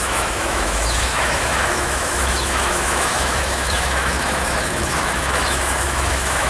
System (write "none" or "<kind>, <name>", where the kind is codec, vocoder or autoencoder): autoencoder, DAC-VAE